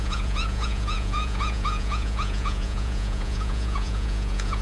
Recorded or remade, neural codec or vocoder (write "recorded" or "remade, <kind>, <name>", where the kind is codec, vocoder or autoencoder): remade, vocoder, Vocos